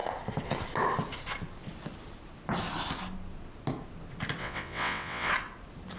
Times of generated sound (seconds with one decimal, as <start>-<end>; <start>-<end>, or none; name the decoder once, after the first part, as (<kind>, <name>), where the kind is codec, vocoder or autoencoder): 4.4-5.3 (vocoder, WaveNeXt)

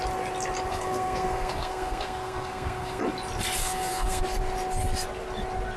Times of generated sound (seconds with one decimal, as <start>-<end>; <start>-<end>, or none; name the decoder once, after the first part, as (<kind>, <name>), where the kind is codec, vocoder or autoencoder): 0.7-3.0 (codec, SNAC); 3.6-4.2

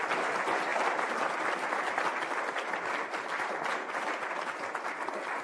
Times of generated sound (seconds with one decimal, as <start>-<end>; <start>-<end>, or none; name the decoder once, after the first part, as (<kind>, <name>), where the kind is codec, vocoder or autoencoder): none

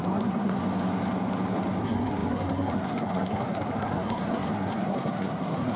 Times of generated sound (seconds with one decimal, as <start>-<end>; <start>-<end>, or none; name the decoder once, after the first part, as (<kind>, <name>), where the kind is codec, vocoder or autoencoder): 0.0-0.6 (codec, SNAC); 1.8-5.8

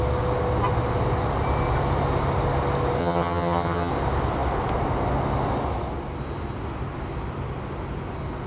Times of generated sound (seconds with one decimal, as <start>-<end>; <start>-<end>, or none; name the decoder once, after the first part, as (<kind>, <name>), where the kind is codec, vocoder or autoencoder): 3.0-3.9 (vocoder, HiFi-GAN)